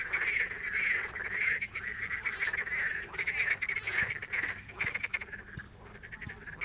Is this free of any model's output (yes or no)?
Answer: yes